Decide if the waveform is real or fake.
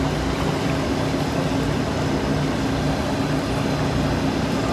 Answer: real